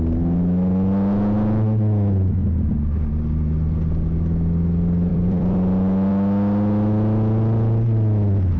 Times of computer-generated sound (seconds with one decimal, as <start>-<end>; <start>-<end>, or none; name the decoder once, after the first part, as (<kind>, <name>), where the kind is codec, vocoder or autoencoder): 5.1-6.1 (vocoder, BigVGAN v2)